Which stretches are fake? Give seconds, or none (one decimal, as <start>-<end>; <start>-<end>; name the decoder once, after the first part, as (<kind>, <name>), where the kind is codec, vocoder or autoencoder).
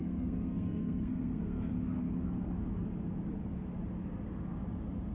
0.0-1.7 (codec, SNAC)